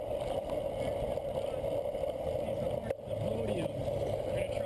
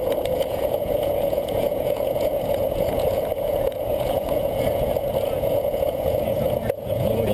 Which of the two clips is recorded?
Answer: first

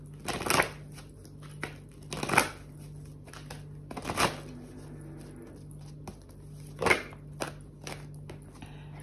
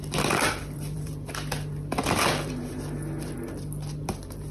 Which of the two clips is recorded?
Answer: first